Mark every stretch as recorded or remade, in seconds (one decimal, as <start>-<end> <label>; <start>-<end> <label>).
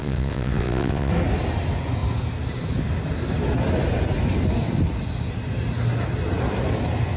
0.0-1.1 remade; 1.1-7.2 recorded